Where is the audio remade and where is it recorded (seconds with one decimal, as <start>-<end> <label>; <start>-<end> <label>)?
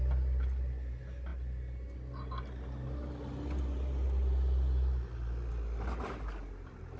0.0-7.0 recorded